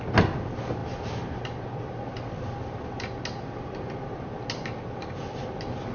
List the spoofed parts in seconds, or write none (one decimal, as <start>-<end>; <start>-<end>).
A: none